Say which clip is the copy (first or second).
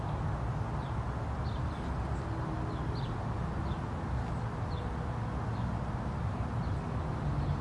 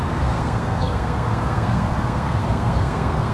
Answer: second